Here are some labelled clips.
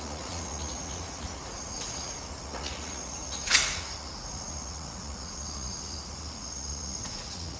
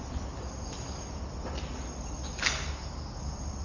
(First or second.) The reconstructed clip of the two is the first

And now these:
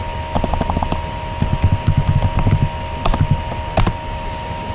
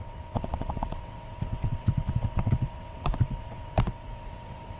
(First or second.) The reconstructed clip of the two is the second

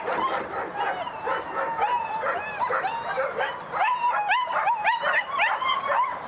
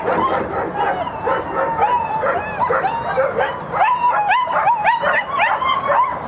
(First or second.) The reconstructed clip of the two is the first